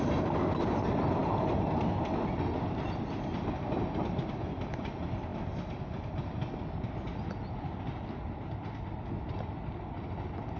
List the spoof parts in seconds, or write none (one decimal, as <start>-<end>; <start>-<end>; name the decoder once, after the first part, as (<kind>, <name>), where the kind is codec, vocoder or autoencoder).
none